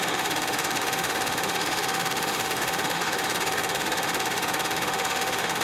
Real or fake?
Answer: fake